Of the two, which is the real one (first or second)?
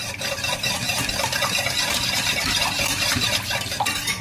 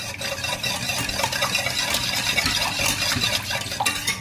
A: second